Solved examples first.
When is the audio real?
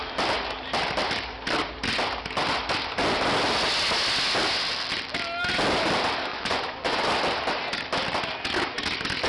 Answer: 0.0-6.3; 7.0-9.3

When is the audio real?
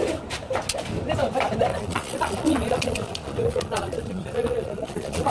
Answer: 0.0-1.7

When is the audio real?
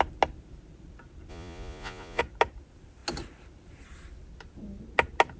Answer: 0.0-1.3; 2.2-5.4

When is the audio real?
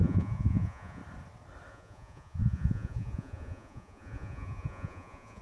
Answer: 1.0-1.7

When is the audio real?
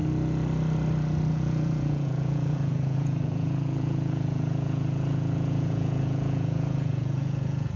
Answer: 0.0-1.3